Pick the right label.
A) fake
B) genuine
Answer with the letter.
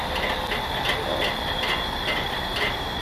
B